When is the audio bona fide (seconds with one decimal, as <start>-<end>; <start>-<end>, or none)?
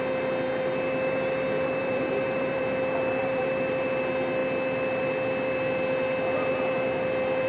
0.0-1.8; 2.6-3.2; 4.0-7.5